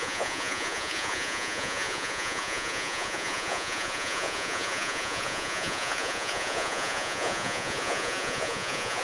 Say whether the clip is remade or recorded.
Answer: remade